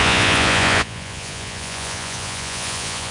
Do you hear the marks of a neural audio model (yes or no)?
yes